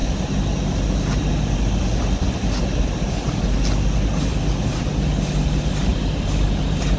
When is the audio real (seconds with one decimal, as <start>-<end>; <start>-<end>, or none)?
0.0-5.9; 6.6-7.0